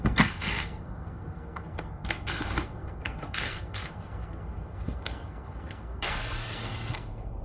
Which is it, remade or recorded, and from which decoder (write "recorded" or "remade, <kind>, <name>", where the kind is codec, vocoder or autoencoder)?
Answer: remade, codec, SNAC